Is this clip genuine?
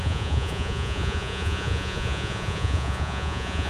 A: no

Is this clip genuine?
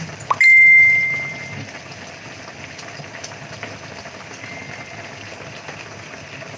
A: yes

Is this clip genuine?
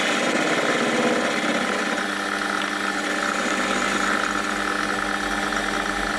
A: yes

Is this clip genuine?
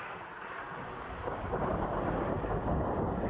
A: yes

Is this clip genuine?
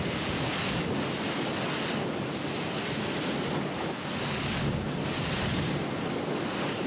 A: yes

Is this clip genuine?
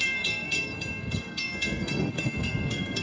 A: no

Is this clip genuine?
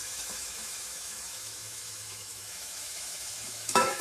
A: no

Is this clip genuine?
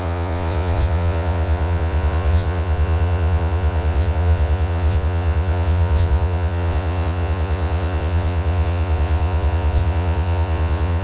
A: no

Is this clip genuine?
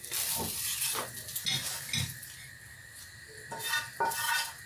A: yes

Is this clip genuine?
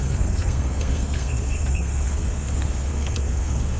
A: no